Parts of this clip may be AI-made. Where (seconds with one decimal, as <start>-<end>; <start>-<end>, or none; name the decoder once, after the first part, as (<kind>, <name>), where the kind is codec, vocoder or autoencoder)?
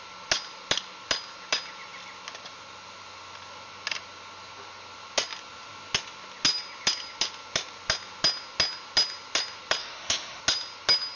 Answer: 9.8-10.4 (autoencoder, DAC-VAE)